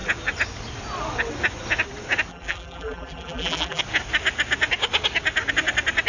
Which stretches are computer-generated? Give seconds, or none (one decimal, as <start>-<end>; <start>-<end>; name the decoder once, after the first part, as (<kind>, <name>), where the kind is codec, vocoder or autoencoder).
2.3-3.8 (vocoder, BigVGAN v2)